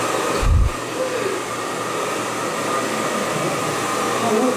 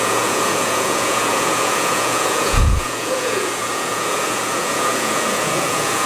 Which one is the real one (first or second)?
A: first